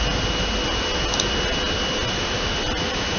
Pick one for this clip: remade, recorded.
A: recorded